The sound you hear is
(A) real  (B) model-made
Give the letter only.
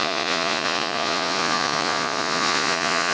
B